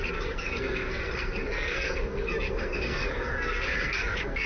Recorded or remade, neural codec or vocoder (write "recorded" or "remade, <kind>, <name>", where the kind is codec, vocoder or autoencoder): remade, codec, SNAC